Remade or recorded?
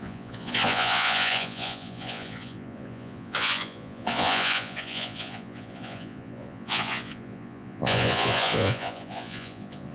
remade